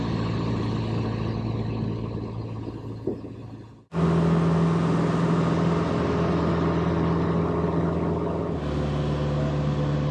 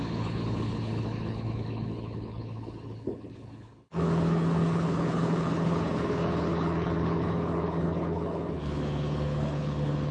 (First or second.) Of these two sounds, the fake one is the second